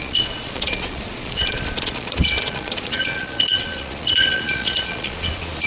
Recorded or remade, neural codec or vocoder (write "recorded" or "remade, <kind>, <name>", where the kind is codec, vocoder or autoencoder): remade, vocoder, Vocos